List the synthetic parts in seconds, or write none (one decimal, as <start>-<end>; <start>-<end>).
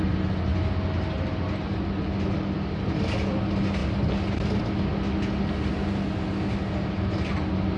none